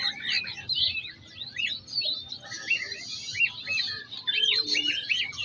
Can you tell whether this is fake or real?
real